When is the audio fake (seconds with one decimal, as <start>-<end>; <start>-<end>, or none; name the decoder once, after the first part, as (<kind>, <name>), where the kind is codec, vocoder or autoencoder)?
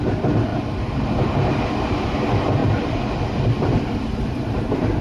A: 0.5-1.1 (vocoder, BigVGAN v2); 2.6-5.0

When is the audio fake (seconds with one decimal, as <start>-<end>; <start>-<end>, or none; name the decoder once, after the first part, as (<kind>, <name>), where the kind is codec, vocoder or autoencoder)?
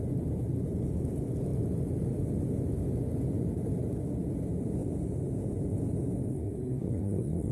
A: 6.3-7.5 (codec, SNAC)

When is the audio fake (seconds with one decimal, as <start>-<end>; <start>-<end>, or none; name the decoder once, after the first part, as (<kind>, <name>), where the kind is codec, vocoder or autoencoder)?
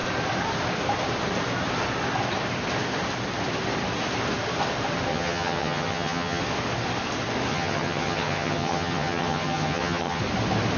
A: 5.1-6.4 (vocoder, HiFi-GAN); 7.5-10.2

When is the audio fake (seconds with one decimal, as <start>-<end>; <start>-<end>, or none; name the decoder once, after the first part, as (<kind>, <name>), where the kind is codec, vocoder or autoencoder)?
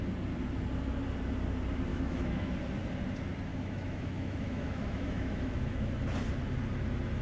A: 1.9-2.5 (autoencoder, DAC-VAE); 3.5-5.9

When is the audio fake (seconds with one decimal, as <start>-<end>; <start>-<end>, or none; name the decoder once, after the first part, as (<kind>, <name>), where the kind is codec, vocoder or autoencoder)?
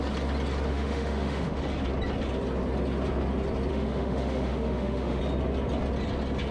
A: 0.7-1.6 (autoencoder, DAC-VAE); 3.7-5.2